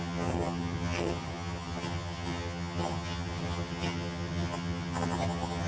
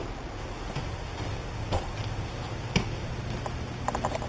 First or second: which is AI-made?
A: first